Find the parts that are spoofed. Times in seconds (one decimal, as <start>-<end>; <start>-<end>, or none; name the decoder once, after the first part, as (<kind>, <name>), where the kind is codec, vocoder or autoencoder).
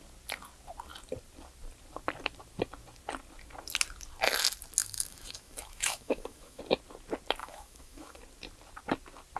4.8-6.6 (autoencoder, DAC-VAE); 7.4-8.2